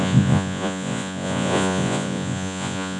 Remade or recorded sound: remade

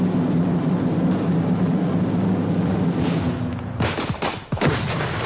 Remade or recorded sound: recorded